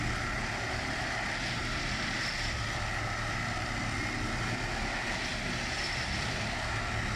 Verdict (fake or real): real